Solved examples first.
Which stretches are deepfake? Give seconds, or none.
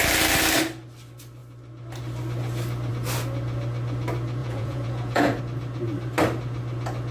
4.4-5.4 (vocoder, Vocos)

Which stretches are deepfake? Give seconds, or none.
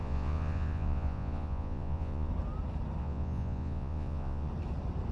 0.0-2.3 (vocoder, Vocos); 3.0-4.5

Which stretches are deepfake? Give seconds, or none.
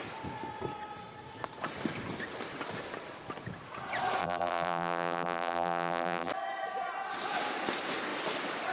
4.2-6.3 (vocoder, BigVGAN v2)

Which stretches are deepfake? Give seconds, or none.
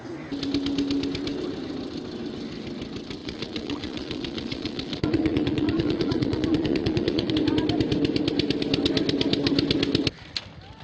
3.2-7.3 (vocoder, Vocos)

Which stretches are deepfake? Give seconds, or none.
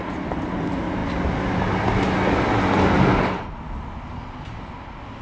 none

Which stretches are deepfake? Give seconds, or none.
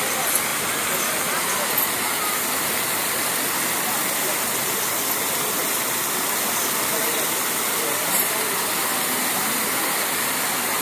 none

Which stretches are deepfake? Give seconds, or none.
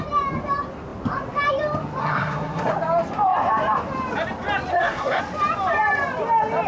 2.0-2.7 (codec, SNAC); 4.7-5.2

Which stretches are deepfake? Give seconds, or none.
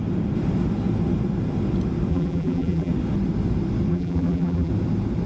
2.1-2.9 (vocoder, BigVGAN v2); 3.9-4.7